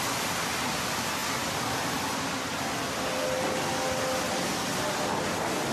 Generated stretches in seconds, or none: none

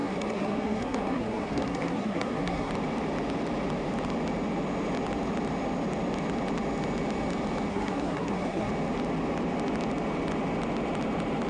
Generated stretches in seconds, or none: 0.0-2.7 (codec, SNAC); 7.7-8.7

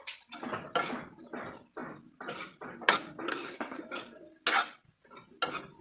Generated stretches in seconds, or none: 3.3-3.8 (codec, SNAC)

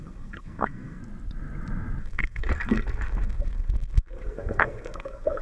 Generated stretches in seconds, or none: 0.0-1.0 (codec, SNAC); 2.0-5.4